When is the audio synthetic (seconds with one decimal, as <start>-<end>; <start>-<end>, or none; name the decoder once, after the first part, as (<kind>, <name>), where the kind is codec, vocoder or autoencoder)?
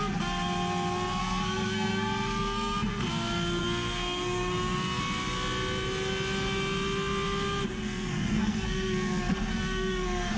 1.2-3.1 (codec, SNAC); 3.6-5.0; 7.8-10.4